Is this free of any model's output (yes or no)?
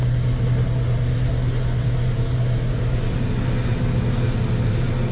yes